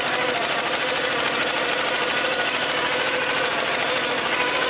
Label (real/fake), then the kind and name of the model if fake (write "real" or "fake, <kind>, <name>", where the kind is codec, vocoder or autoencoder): real